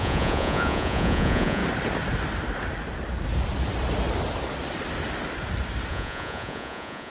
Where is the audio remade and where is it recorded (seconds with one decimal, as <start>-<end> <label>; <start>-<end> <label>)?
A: 0.0-1.6 remade; 1.6-5.9 recorded; 5.9-7.1 remade